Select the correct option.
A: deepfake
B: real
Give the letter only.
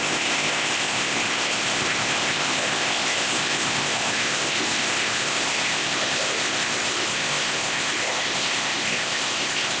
A